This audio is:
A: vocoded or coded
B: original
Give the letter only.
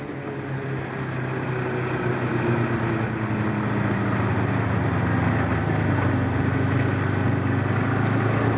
B